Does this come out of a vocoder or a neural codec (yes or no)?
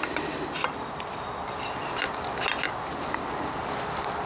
no